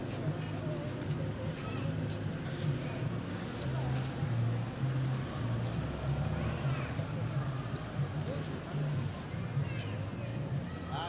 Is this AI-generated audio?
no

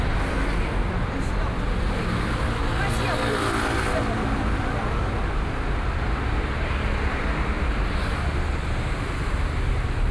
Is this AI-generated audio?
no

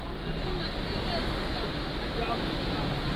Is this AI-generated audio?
no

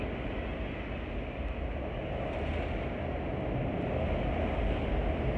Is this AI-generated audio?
no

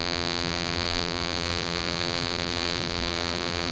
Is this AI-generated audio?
yes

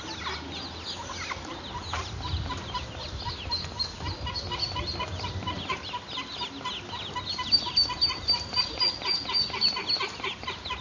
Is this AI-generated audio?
no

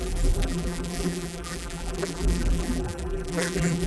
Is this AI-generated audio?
yes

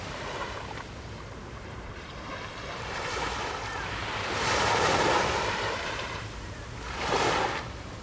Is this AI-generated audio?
yes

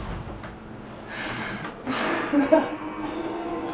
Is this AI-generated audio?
yes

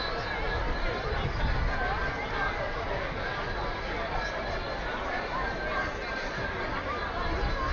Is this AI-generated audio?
no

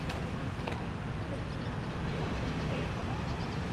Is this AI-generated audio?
no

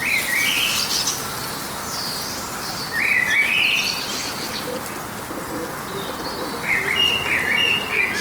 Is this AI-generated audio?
no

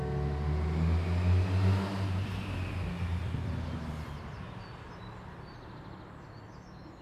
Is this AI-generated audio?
no